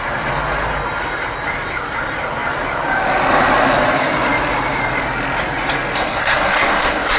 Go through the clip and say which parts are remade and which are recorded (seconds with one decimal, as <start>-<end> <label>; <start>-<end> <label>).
0.0-6.0 recorded; 6.0-7.2 remade